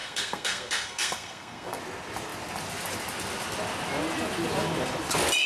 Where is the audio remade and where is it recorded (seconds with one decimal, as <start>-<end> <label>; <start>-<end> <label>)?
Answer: 0.0-1.8 remade; 1.8-5.5 recorded